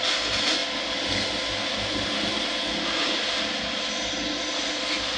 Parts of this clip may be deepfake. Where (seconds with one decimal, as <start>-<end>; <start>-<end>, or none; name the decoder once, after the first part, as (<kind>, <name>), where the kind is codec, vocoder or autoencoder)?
none